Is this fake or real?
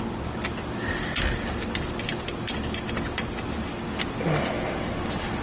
real